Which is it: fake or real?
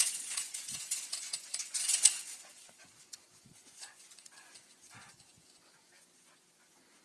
fake